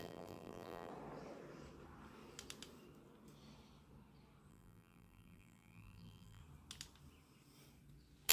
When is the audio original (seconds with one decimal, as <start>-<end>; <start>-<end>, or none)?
0.9-4.5; 6.4-8.3